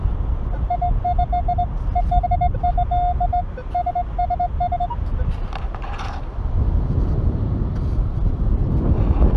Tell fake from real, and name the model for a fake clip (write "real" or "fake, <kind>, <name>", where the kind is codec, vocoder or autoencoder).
real